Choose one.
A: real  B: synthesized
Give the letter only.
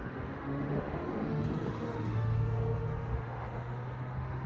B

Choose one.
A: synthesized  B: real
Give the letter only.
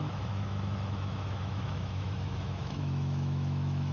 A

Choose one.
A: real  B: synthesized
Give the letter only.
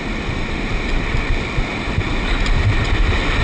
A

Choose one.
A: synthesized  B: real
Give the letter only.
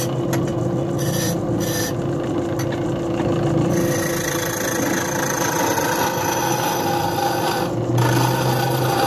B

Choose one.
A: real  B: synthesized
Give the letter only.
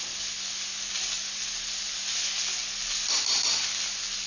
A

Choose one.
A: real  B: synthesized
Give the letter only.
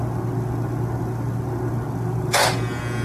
A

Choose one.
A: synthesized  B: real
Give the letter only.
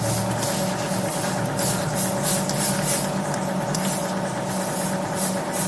B